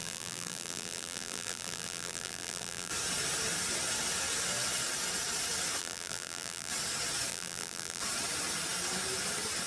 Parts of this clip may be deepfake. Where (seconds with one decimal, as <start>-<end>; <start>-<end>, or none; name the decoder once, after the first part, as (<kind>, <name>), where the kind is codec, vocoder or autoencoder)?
0.0-2.9 (vocoder, BigVGAN v2); 5.8-6.7; 7.3-8.0

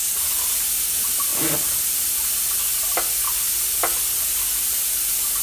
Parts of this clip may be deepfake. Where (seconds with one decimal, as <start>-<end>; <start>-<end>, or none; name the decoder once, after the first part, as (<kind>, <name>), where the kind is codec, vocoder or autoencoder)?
1.3-1.8 (vocoder, BigVGAN v2)

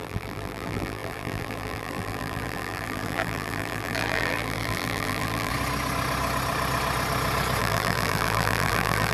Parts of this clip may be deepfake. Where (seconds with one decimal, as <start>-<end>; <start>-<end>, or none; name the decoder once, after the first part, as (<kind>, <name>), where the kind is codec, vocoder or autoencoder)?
0.0-5.5 (vocoder, BigVGAN v2); 7.6-9.1

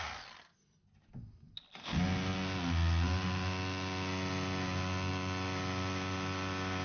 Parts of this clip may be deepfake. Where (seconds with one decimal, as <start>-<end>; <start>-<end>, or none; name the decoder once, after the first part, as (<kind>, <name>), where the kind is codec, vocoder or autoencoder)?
none